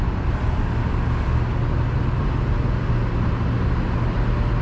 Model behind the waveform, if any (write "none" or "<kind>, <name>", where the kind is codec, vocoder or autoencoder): none